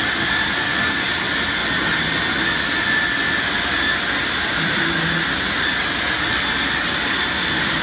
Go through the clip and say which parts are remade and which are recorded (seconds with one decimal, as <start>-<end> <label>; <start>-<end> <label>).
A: 0.0-7.8 recorded